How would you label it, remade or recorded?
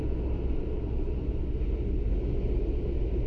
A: recorded